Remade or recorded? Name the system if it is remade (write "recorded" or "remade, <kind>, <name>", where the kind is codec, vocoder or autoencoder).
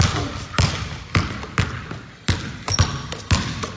recorded